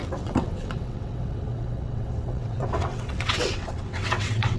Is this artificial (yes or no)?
yes